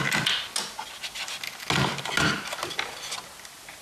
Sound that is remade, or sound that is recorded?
recorded